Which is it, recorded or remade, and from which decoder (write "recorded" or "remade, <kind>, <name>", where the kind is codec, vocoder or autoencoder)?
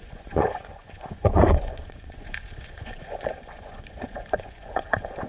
remade, vocoder, Vocos